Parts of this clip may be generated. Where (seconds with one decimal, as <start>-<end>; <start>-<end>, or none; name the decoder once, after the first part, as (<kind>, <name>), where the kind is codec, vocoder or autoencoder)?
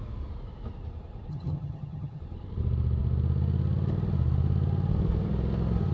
1.3-2.2 (vocoder, HiFi-GAN)